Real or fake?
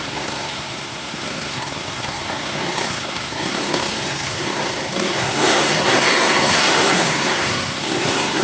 fake